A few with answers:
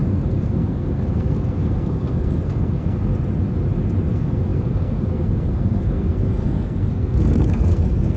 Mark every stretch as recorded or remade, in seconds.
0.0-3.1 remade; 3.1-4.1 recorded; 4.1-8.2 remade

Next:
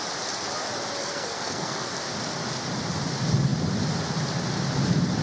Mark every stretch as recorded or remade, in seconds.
0.0-1.0 recorded; 1.0-1.9 remade; 1.9-5.2 recorded